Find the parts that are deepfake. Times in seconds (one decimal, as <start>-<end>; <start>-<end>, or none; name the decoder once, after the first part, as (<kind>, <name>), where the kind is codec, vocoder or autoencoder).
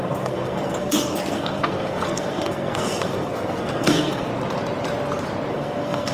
0.0-4.3 (codec, SNAC); 5.5-6.1